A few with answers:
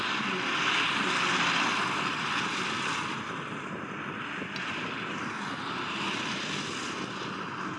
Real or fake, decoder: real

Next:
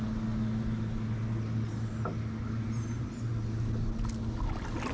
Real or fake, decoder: real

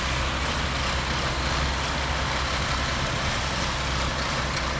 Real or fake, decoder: real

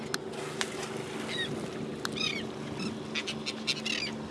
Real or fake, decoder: real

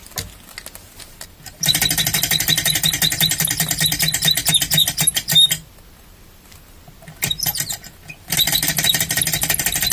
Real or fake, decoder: real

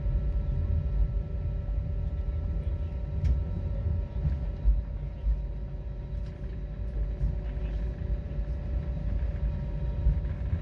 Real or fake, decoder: real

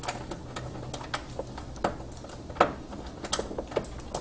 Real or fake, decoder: real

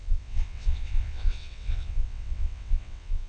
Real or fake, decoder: fake, vocoder, WaveNeXt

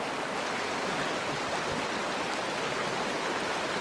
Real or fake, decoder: real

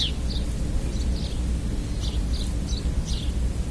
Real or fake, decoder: real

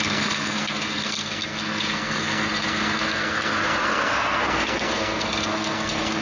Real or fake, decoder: fake, codec, SNAC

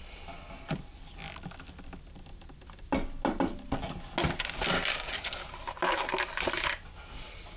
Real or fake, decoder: real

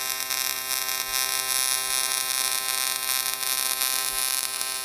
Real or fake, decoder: real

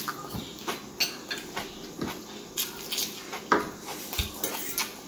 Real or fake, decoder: real